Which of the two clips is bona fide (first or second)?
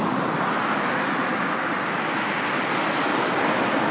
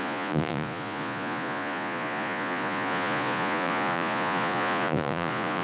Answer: first